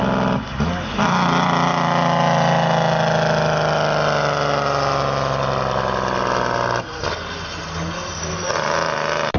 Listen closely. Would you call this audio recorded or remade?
recorded